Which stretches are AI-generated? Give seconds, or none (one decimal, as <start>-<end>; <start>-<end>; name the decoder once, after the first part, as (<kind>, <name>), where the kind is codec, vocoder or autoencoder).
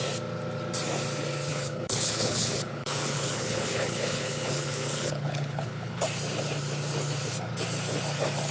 1.5-6.0 (codec, HILCodec)